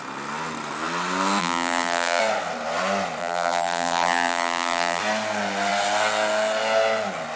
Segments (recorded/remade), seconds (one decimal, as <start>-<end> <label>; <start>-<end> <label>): 0.0-1.4 recorded; 1.4-2.2 remade; 2.2-3.2 recorded; 3.2-5.0 remade; 5.0-7.4 recorded